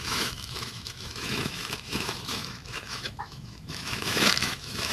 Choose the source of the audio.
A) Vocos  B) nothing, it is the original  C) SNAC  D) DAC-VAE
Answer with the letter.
D